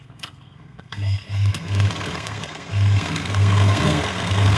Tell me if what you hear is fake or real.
fake